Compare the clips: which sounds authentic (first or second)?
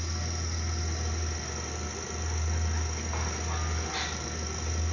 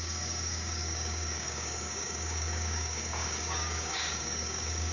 first